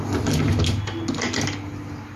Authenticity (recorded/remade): recorded